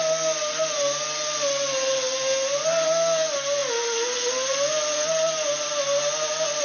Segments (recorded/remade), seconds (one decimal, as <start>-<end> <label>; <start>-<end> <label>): 0.0-6.6 recorded